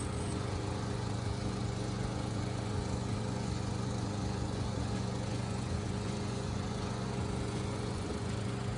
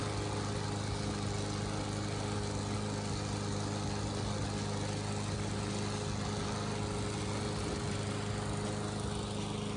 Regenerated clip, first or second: first